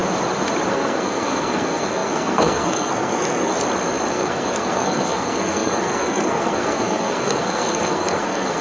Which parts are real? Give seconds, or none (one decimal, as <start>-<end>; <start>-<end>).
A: 0.0-0.7; 3.5-4.1